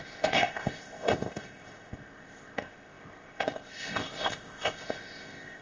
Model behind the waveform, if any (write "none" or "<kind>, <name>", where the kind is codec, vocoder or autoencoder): codec, ZipCodec